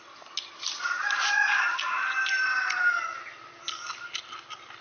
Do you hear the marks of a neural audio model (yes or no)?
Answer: no